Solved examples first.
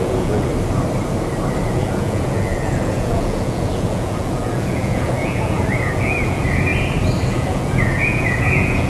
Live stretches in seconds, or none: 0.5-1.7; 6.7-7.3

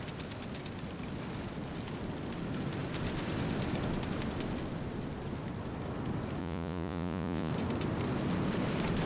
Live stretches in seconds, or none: 0.0-6.4; 7.5-9.1

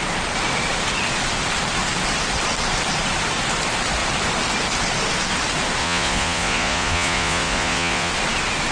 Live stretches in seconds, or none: 0.0-5.8; 8.1-8.7

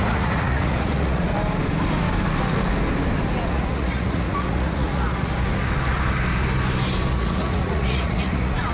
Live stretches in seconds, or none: 1.3-3.5; 5.3-7.1

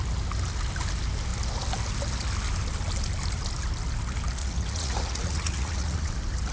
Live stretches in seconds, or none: 0.0-4.4; 6.1-6.5

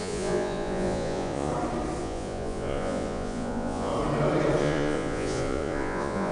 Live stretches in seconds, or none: 1.5-2.0; 3.9-4.6

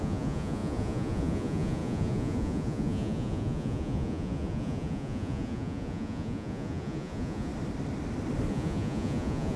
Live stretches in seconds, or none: 7.5-8.5

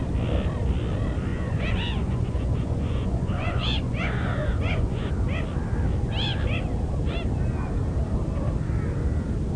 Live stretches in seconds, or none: 0.0-1.3; 5.1-9.6